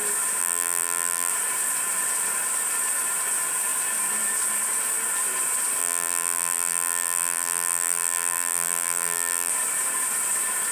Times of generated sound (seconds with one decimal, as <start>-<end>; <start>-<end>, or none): 0.4-1.3; 5.8-9.5